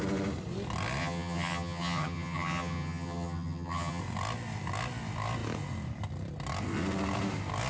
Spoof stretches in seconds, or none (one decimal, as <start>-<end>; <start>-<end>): 1.0-4.0